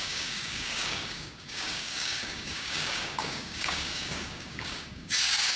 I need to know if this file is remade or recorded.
remade